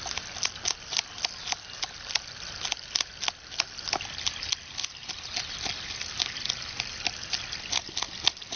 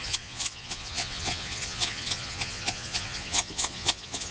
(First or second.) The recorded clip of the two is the first